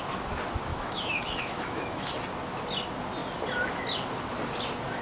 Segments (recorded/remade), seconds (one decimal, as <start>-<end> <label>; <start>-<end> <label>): 0.0-0.7 recorded; 0.7-2.1 remade; 2.1-5.0 recorded